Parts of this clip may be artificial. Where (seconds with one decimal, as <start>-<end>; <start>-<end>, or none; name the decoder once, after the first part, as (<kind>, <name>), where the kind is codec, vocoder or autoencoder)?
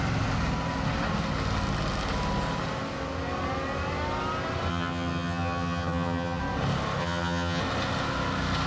4.7-6.4 (vocoder, HiFi-GAN); 7.0-7.6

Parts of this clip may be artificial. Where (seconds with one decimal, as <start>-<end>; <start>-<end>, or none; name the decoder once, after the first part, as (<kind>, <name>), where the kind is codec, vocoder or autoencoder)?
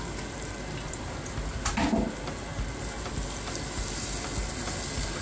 none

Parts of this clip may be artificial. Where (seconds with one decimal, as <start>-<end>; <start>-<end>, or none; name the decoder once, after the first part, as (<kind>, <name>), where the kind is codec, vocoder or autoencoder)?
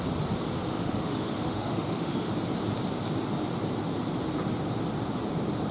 0.6-2.3 (autoencoder, DAC-VAE)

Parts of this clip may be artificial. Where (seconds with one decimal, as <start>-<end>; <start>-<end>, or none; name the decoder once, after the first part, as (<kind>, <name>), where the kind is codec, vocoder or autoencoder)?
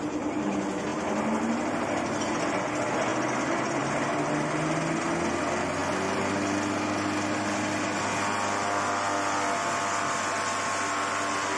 none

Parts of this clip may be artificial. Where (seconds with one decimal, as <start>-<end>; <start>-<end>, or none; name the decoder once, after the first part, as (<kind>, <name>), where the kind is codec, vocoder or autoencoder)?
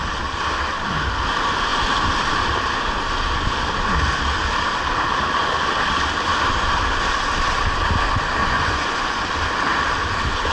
8.4-9.2 (vocoder, Vocos)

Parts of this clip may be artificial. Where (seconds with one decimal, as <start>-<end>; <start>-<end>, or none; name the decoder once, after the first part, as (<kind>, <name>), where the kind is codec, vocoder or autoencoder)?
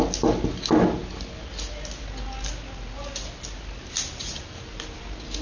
none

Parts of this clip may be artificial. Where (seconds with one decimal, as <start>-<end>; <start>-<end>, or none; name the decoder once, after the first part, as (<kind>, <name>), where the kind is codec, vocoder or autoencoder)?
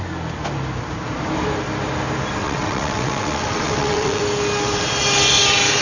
2.4-4.2 (vocoder, WaveNeXt)